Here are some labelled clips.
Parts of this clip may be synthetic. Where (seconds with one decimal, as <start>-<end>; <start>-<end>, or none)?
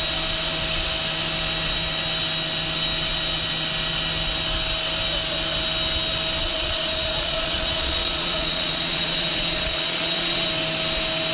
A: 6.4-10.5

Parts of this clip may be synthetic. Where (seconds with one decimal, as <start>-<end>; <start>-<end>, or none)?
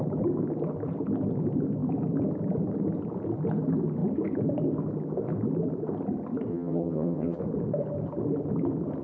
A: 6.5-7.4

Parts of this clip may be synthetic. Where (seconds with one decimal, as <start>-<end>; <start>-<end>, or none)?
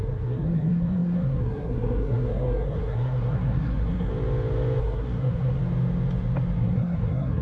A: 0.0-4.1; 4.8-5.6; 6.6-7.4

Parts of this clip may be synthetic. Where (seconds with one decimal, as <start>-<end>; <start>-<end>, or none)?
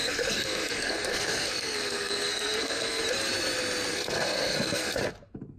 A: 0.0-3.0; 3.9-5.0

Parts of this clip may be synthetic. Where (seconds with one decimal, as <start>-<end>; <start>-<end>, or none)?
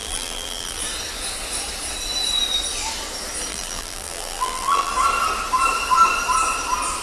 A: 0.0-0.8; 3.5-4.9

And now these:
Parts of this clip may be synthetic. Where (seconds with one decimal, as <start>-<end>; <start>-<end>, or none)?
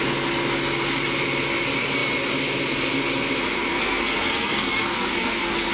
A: 3.7-5.7